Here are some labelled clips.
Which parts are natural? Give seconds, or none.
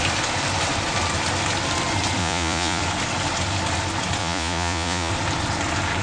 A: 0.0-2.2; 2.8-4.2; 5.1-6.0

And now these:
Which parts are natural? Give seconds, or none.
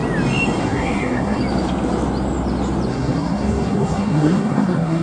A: 0.0-0.6; 1.4-2.9